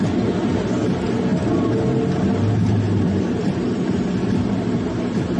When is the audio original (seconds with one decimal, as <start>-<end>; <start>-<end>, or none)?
0.0-5.4